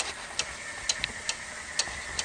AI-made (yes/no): no